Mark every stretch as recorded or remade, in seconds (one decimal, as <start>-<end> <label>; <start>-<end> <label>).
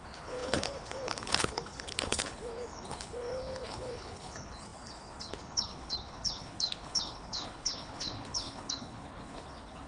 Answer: 0.0-9.9 remade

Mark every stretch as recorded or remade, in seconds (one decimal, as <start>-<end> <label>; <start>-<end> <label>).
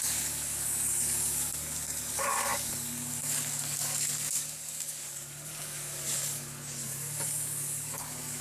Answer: 0.0-8.4 remade